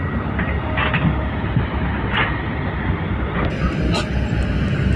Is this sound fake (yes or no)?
no